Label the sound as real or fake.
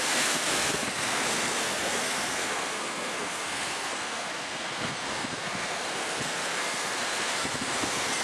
fake